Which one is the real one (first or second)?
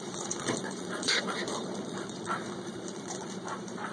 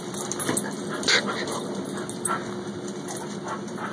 second